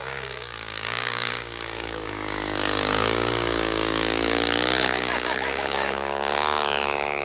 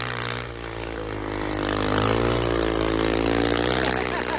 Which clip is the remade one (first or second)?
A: first